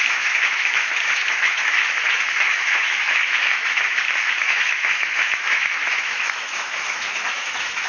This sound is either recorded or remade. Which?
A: remade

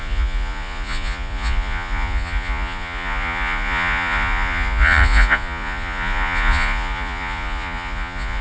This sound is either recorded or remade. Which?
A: remade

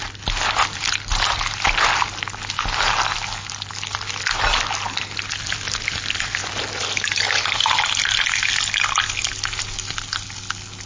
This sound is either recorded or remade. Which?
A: recorded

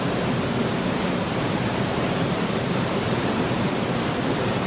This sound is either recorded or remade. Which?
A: remade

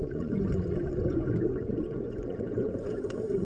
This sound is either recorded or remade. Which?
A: remade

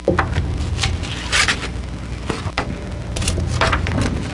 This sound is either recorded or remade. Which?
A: recorded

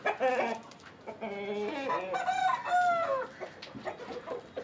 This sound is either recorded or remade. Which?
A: recorded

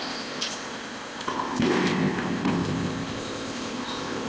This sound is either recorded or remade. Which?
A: remade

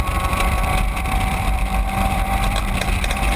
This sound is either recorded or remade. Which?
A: remade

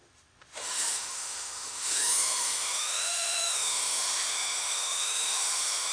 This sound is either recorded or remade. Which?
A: remade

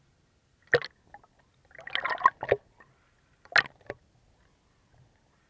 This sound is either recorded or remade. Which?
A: recorded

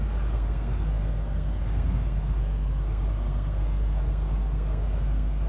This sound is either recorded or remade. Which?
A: remade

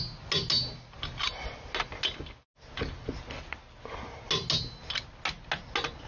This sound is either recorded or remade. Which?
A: recorded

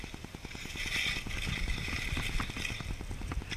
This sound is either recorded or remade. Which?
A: recorded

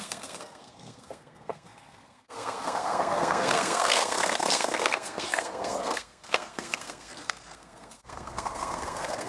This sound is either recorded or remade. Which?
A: remade